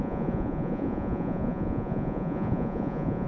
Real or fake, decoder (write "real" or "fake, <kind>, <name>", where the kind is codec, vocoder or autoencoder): fake, vocoder, Vocos